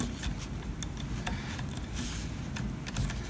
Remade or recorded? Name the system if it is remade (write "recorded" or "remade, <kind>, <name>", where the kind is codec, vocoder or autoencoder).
recorded